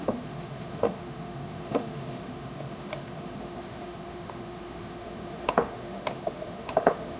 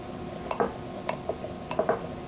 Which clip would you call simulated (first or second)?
first